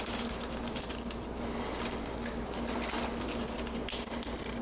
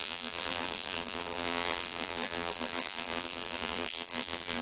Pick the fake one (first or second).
second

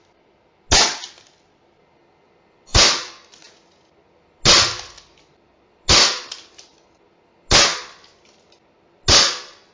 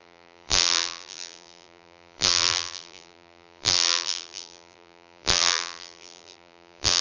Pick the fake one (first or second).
second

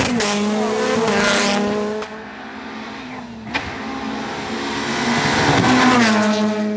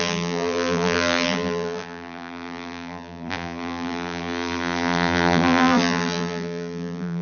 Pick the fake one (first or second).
second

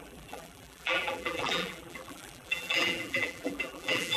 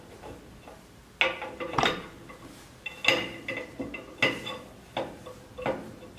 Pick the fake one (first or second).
first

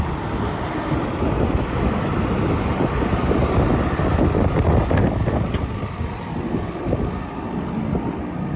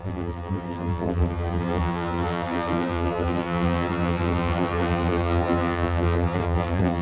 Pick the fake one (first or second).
second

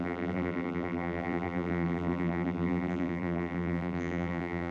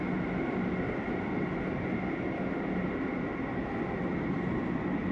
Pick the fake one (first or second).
first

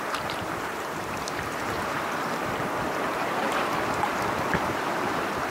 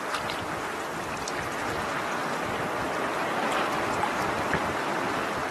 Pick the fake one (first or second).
first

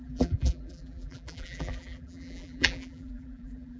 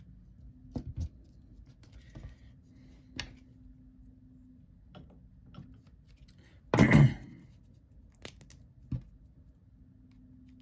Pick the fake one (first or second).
first